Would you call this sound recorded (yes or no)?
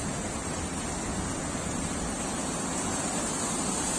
yes